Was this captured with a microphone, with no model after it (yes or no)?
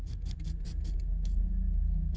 yes